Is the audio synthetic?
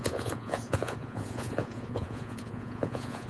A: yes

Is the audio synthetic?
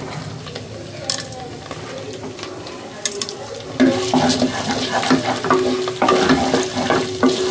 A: no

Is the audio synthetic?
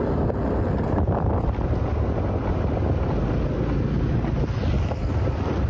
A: no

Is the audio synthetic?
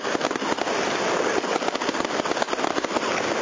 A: no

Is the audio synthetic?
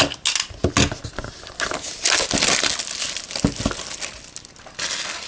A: no